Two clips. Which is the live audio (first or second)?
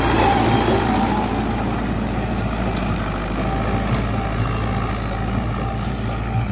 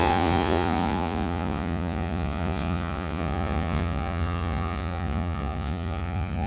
first